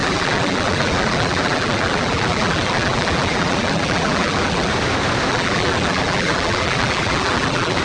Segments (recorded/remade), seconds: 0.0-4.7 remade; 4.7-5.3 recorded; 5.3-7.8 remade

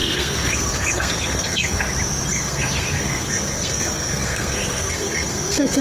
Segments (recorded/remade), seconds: 0.0-1.8 remade; 1.8-2.3 recorded; 2.3-5.8 remade

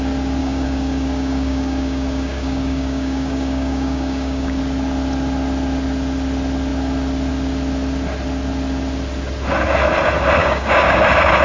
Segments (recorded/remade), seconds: 0.0-0.4 recorded; 0.4-4.6 remade; 4.6-10.4 recorded; 10.4-11.0 remade; 11.0-11.4 recorded

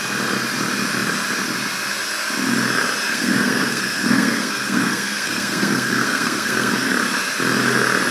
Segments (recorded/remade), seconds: 0.0-3.1 recorded; 3.1-6.7 remade; 6.7-8.1 recorded

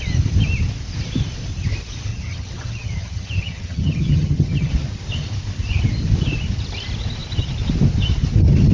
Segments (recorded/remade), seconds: 0.0-2.1 recorded; 2.1-4.7 remade; 4.7-8.7 recorded

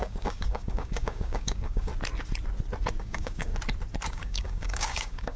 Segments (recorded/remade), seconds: 0.0-1.9 remade; 1.9-3.0 recorded; 3.0-3.5 remade; 3.5-4.1 recorded; 4.1-5.4 remade

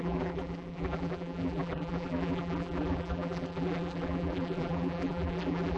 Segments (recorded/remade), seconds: 0.0-5.8 remade

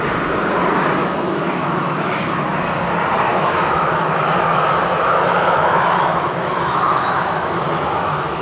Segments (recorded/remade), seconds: 0.0-1.0 recorded; 1.0-2.3 remade; 2.3-3.3 recorded; 3.3-8.4 remade